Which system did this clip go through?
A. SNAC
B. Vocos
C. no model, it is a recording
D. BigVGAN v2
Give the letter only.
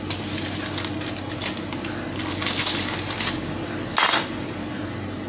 C